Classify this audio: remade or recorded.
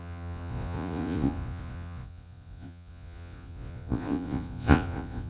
remade